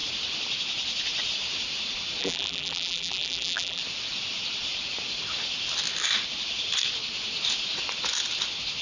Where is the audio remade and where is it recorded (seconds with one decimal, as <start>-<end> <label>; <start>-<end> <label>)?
0.0-2.2 recorded; 2.2-3.8 remade; 3.8-8.8 recorded